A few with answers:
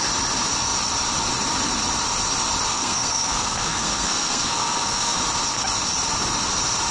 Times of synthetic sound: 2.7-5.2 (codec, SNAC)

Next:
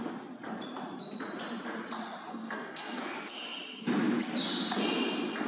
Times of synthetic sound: 2.3-3.0 (codec, SNAC)

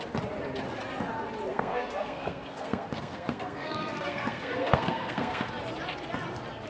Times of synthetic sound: 1.5-5.5 (codec, SNAC)

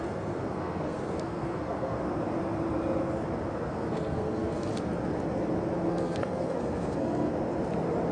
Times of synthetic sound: 0.0-2.0 (codec, SNAC); 3.7-4.7; 5.9-7.3

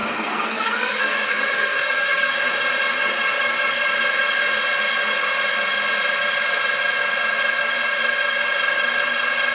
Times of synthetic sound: 0.0-2.3 (codec, SNAC)

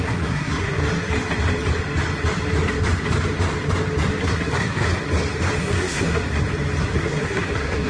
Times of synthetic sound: 0.0-0.8 (codec, SNAC); 4.2-4.9; 5.6-6.2; 6.8-7.9